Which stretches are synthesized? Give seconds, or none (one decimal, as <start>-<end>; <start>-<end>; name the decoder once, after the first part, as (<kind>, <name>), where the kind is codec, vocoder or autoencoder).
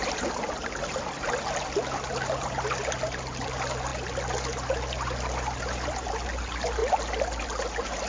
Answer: none